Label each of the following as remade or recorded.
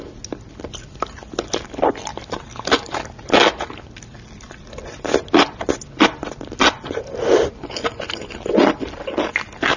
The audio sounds recorded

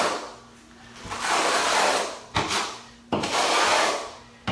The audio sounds recorded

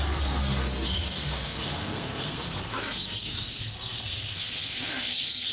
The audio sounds remade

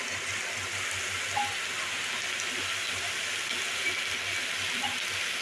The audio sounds recorded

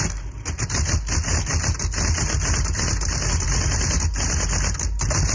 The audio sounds recorded